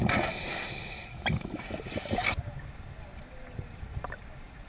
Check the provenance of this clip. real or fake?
real